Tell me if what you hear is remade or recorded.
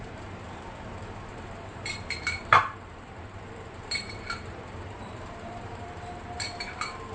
remade